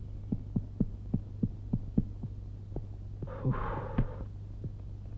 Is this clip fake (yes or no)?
no